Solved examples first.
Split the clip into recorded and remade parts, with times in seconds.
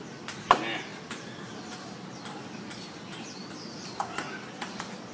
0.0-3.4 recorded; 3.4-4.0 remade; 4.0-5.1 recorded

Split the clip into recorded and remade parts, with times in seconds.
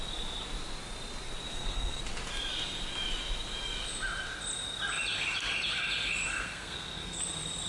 0.0-1.5 recorded; 1.5-2.0 remade; 2.0-6.3 recorded; 6.3-7.2 remade; 7.2-7.7 recorded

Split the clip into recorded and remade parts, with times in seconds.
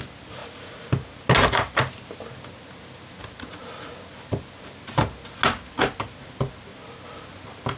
0.0-7.8 recorded